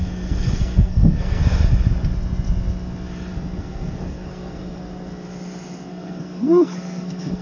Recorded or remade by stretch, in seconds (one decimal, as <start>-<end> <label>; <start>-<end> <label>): 0.0-1.4 remade; 1.4-3.6 recorded; 3.6-5.1 remade; 5.1-5.9 recorded; 5.9-7.4 remade